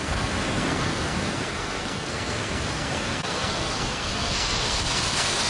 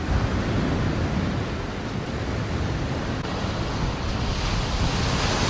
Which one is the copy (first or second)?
first